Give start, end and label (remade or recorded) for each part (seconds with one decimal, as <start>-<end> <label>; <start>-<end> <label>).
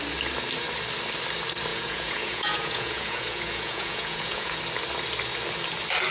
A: 0.0-1.7 recorded; 1.7-4.6 remade; 4.6-6.1 recorded